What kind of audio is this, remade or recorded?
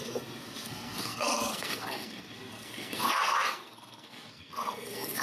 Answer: remade